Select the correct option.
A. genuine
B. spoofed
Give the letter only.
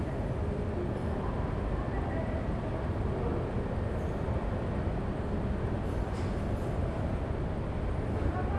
A